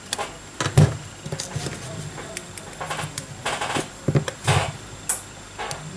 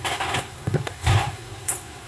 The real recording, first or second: first